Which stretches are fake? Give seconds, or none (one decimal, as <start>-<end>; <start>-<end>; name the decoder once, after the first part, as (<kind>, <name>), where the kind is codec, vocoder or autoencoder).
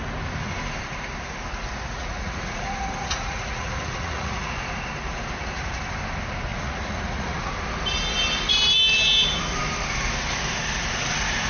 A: 1.9-4.5 (vocoder, Vocos); 6.5-7.5